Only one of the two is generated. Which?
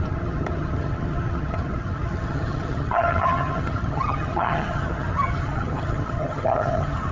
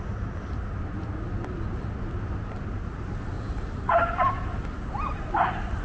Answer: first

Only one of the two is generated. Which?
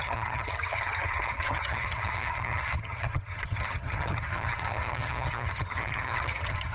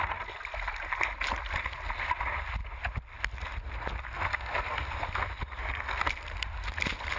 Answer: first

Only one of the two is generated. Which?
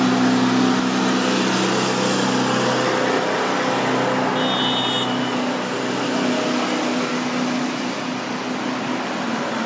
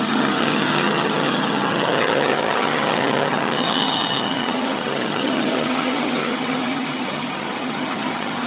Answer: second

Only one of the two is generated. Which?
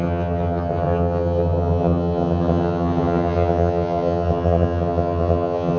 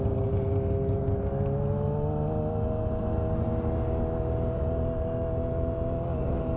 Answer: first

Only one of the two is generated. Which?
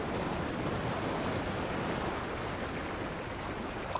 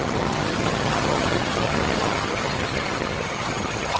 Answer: second